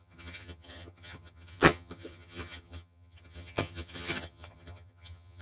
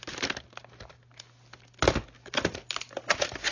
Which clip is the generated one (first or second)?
first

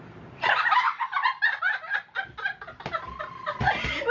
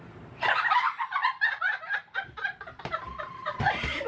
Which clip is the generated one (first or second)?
second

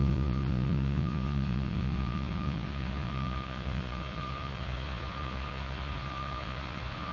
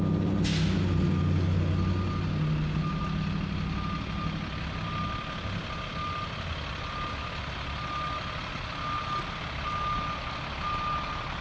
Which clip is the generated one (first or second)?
first